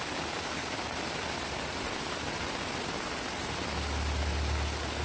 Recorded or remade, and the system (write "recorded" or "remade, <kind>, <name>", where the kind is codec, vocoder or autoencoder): recorded